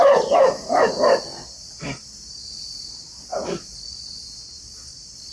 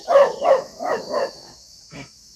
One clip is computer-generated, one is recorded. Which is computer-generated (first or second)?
second